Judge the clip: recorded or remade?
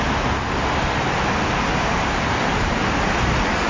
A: recorded